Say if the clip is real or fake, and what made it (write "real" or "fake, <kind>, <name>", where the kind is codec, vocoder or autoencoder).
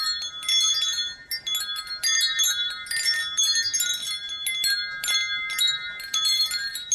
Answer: real